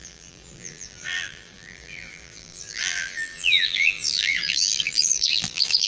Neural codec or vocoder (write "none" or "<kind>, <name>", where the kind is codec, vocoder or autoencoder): vocoder, BigVGAN v2